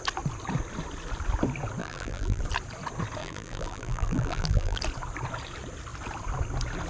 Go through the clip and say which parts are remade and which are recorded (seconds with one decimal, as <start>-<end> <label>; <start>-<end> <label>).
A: 0.0-1.8 recorded; 1.8-2.4 remade; 2.4-3.2 recorded; 3.2-4.8 remade; 4.8-6.9 recorded